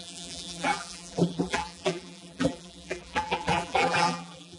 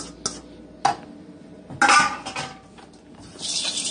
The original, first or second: second